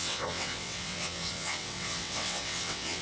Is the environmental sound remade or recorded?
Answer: remade